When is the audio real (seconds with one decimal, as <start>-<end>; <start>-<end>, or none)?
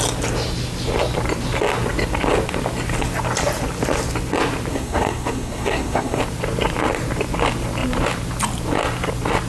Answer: 0.0-4.7; 6.2-9.5